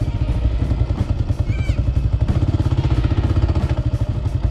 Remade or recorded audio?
recorded